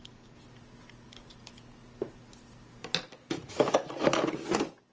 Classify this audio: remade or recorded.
recorded